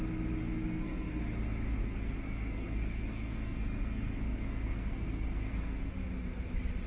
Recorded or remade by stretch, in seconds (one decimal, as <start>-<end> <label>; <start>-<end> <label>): 0.0-0.4 recorded; 0.4-1.2 remade; 1.2-1.8 recorded; 1.8-5.8 remade; 5.8-6.9 recorded